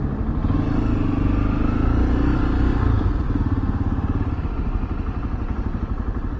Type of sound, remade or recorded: recorded